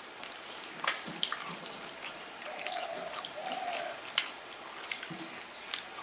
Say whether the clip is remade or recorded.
recorded